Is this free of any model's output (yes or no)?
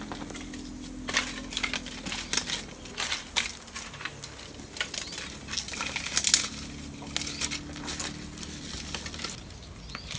yes